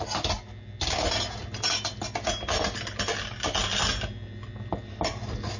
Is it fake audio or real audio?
real